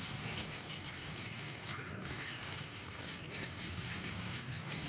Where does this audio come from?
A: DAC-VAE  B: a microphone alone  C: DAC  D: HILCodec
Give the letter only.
C